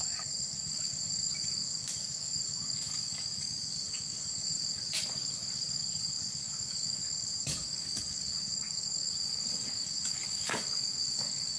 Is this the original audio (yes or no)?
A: no